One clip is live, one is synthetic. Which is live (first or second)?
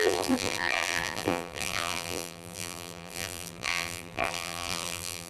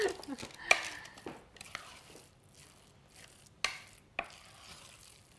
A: second